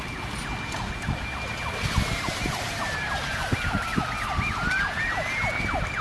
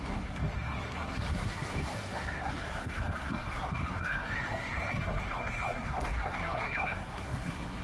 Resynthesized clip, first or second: second